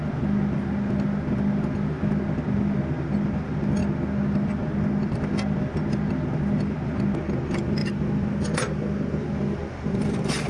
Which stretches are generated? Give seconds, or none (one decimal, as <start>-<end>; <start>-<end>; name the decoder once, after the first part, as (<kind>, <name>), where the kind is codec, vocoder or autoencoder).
9.6-10.5 (vocoder, BigVGAN v2)

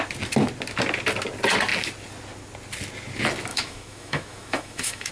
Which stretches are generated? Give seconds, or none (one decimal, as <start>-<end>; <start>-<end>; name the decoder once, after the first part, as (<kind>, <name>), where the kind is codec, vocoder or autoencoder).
3.5-5.1 (autoencoder, DAC-VAE)

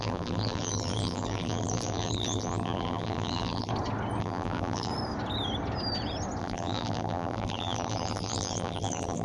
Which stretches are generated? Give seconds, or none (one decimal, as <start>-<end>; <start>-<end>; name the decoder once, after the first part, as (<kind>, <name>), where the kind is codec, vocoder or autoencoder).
0.0-3.7 (vocoder, BigVGAN v2); 4.2-4.9; 6.4-9.2

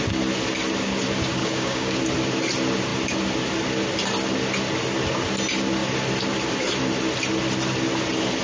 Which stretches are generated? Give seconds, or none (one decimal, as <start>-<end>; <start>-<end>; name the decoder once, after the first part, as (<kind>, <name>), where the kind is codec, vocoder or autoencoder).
1.4-2.0 (codec, DAC)

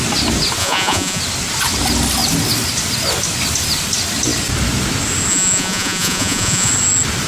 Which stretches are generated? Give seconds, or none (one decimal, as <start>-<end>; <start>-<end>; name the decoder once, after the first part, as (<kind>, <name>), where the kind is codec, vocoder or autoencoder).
0.6-1.2 (vocoder, Vocos); 5.3-6.7

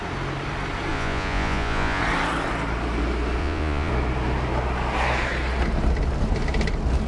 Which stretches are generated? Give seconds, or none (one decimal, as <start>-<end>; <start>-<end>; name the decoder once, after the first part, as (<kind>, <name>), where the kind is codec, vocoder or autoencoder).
0.9-2.0 (vocoder, Vocos); 3.4-3.9